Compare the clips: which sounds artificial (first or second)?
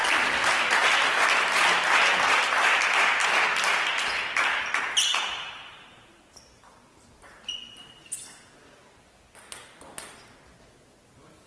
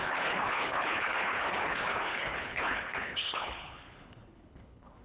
second